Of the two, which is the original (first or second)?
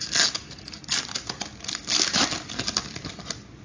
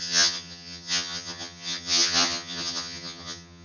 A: first